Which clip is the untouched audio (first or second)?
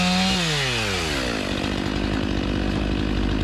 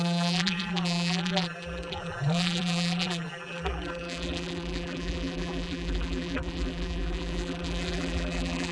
first